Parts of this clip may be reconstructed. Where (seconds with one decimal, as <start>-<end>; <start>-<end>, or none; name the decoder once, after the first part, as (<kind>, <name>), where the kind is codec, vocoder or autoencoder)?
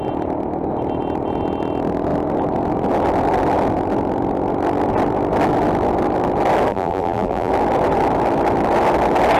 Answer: 6.7-7.5 (vocoder, BigVGAN v2)